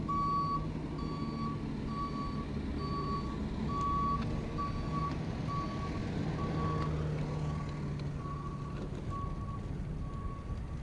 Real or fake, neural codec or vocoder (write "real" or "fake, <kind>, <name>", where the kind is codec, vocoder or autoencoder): real